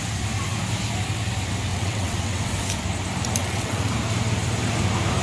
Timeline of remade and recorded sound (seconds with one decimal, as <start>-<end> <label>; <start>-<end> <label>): 0.0-1.7 recorded; 1.7-2.5 remade; 2.5-3.4 recorded; 3.4-3.9 remade; 3.9-5.2 recorded